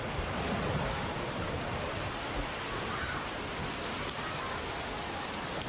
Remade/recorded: recorded